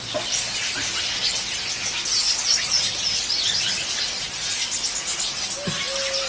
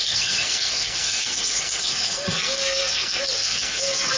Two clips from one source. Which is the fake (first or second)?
second